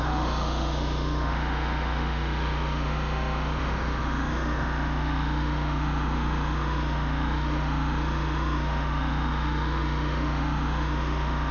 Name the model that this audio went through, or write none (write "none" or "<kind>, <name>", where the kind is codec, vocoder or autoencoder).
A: autoencoder, DAC-VAE